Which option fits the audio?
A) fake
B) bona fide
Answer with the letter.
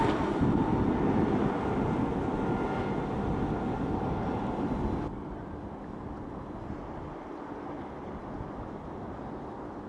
B